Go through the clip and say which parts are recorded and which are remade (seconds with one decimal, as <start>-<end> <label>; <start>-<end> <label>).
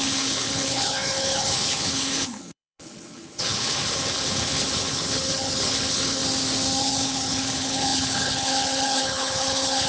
0.0-6.2 remade; 6.2-6.8 recorded; 6.8-9.9 remade